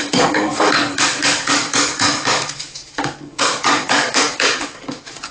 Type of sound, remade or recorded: remade